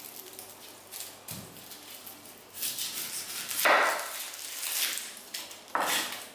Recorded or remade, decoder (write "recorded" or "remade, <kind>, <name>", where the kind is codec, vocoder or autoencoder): recorded